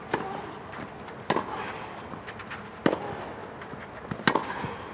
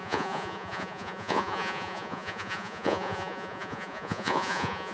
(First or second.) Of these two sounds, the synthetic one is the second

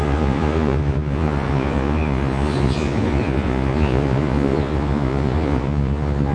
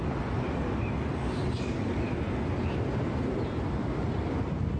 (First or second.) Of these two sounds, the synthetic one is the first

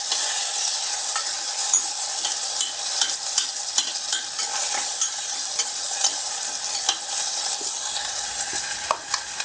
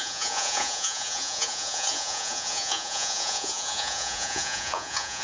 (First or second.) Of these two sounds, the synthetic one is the second